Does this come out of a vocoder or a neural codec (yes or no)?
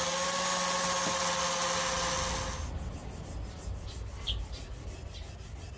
no